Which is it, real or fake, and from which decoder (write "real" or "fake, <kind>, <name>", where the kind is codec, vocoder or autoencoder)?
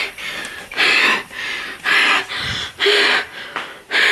real